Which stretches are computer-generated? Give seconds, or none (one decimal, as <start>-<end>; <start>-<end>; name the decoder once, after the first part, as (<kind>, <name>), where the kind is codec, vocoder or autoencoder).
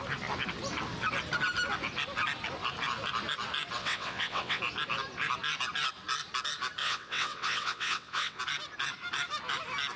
3.8-4.6 (vocoder, WaveNeXt); 6.8-8.4